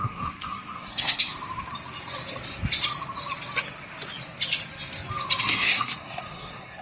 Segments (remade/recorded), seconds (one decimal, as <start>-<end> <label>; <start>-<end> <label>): 0.0-1.3 remade; 1.3-5.4 recorded; 5.4-6.8 remade

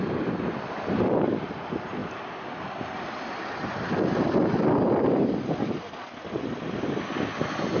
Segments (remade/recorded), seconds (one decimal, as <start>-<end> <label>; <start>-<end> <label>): 0.0-7.8 recorded

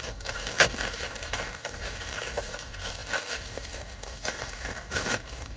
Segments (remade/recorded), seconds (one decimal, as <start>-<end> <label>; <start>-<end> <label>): 0.0-5.6 remade

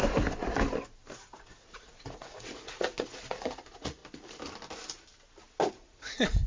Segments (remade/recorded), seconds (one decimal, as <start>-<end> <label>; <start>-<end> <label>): 0.0-1.3 recorded; 1.3-4.0 remade; 4.0-5.7 recorded; 5.7-6.5 remade